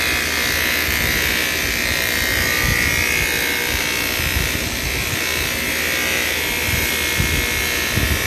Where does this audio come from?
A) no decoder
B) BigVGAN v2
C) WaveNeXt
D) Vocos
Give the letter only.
A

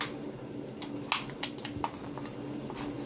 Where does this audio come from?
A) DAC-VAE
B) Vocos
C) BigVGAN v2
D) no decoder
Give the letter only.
D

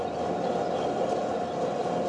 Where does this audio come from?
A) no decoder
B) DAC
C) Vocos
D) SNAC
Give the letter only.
A